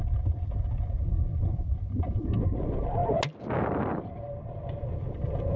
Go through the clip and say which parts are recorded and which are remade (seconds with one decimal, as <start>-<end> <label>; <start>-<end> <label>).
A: 0.0-5.6 recorded